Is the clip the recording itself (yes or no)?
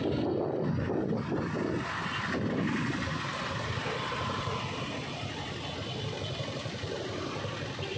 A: yes